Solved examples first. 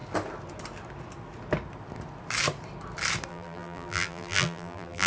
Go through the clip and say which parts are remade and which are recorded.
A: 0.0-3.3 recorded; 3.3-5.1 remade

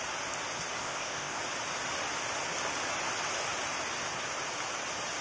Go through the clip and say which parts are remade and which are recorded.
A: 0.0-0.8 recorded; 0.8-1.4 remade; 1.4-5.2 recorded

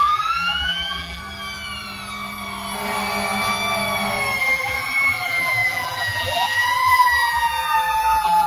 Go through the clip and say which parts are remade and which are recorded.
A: 0.0-1.2 remade; 1.2-4.4 recorded; 4.4-8.5 remade